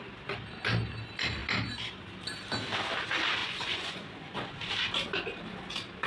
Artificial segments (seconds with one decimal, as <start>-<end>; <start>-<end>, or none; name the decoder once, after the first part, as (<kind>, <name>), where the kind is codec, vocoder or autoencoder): 3.4-4.7 (vocoder, Vocos)